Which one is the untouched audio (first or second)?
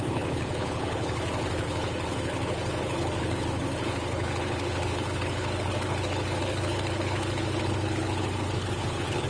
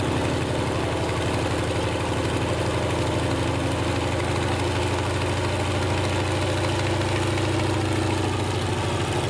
second